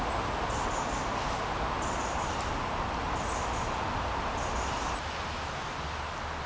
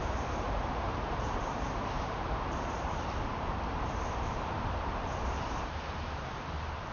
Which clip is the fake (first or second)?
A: second